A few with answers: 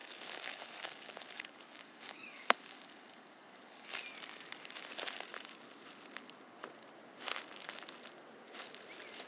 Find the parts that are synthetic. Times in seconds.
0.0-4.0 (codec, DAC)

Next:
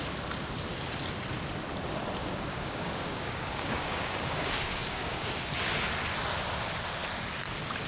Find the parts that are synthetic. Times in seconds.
2.2-5.3 (codec, DAC)

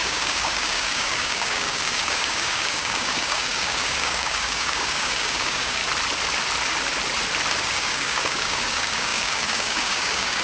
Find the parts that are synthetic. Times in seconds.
0.0-5.8 (codec, DAC); 7.6-10.4

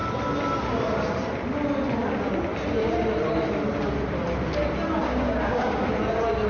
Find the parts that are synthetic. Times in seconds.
5.0-5.9 (codec, DAC)

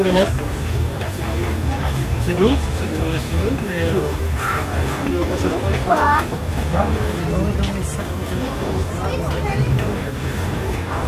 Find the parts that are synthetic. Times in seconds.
0.0-7.2 (codec, DAC); 8.0-8.9; 9.7-11.1